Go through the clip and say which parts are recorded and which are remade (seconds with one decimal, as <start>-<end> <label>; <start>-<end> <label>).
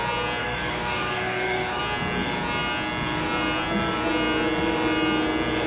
0.0-0.4 recorded; 0.4-1.8 remade; 1.8-5.7 recorded